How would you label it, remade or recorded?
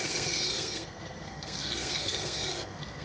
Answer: remade